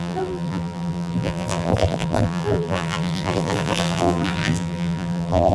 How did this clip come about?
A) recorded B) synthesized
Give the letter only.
B